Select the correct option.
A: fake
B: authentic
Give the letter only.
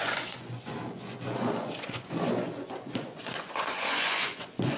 A